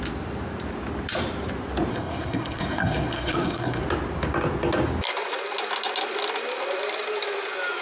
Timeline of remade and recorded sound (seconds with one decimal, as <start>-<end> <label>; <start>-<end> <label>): 0.0-1.9 recorded; 1.9-3.8 remade; 3.8-7.8 recorded